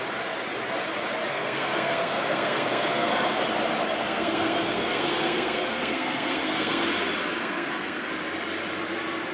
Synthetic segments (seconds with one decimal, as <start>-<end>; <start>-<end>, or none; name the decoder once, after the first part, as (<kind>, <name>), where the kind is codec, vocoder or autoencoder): 1.3-3.1 (codec, SNAC); 4.0-6.8; 7.4-8.1